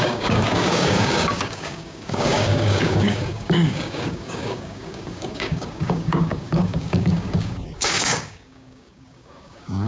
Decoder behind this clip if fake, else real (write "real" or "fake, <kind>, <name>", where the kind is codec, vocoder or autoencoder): fake, codec, DAC